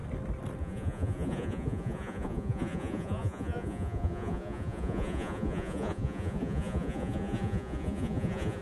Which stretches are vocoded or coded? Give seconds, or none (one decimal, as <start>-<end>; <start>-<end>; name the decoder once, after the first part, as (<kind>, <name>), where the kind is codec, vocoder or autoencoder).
0.6-8.6 (vocoder, Vocos)